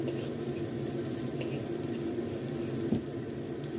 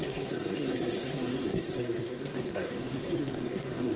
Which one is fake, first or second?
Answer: second